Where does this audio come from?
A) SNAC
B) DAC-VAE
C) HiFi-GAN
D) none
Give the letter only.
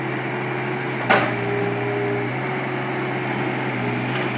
D